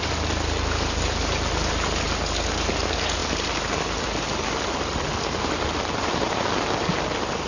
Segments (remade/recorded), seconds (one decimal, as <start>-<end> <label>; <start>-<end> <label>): 0.0-7.5 recorded